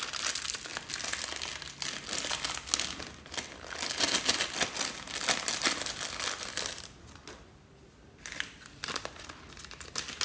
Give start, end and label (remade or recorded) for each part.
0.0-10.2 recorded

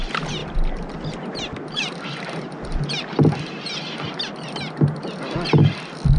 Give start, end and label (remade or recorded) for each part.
0.0-6.2 recorded

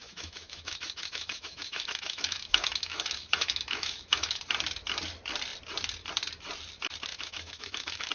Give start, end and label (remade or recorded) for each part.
0.0-4.4 remade; 4.4-7.1 recorded; 7.1-8.1 remade

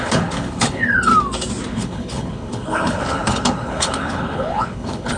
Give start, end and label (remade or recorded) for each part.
0.0-1.1 remade; 1.1-1.7 recorded; 1.7-5.2 remade

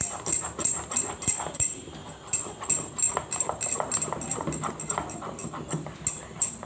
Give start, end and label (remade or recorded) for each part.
0.0-6.7 recorded

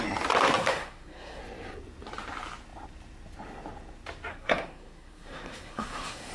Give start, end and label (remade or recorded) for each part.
0.0-0.6 recorded; 0.6-1.4 remade; 1.4-4.3 recorded; 4.3-6.3 remade